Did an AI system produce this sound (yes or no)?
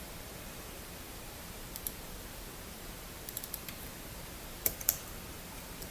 yes